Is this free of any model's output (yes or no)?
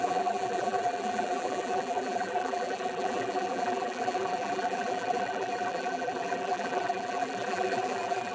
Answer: no